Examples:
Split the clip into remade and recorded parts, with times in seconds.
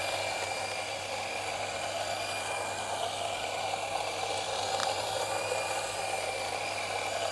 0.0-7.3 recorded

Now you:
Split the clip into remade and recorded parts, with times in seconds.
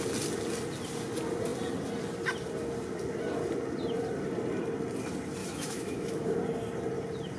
0.0-5.4 recorded; 5.4-6.4 remade; 6.4-7.4 recorded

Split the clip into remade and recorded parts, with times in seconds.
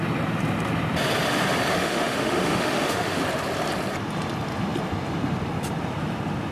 0.0-1.7 recorded; 1.7-3.2 remade; 3.2-6.5 recorded